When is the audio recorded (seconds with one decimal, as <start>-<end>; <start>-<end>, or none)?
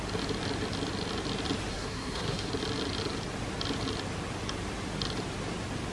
0.0-1.7; 2.5-5.9